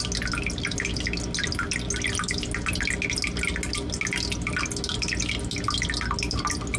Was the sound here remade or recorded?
recorded